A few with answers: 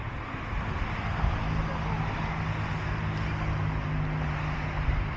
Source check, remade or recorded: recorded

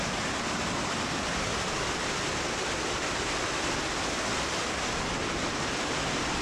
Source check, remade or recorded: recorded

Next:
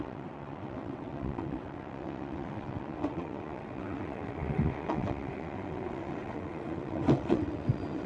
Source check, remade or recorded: remade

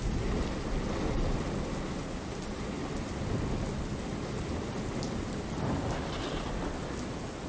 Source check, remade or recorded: recorded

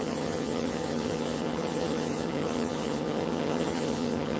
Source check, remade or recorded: remade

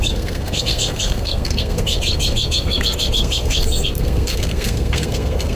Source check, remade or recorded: remade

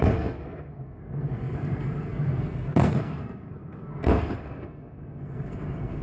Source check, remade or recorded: remade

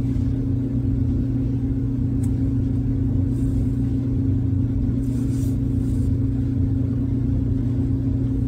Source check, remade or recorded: recorded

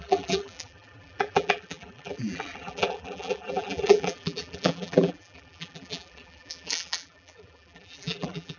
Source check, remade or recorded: remade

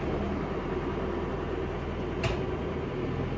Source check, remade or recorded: recorded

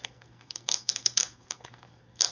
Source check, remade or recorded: remade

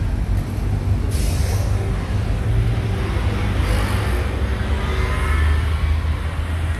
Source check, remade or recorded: recorded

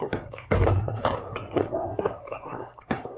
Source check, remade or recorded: remade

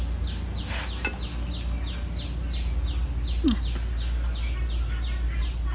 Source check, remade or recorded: recorded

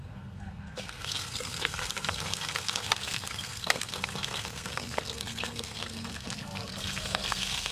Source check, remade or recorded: remade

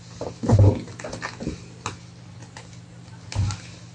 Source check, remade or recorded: recorded